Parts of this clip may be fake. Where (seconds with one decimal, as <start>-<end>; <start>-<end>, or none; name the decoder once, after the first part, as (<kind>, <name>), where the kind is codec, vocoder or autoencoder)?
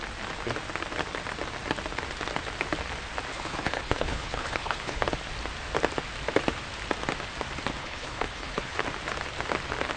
3.3-5.0 (codec, HILCodec); 7.8-8.8